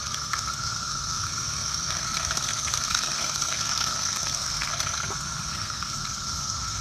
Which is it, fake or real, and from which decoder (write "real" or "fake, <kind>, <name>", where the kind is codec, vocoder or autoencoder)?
fake, codec, SNAC